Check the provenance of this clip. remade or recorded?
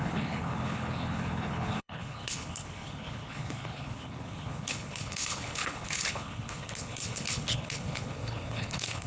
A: remade